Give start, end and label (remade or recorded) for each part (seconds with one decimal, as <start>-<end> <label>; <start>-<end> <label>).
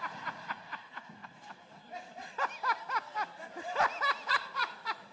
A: 0.0-1.2 remade; 1.2-4.3 recorded; 4.3-5.1 remade